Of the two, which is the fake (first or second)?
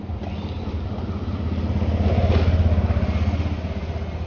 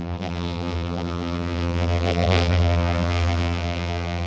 second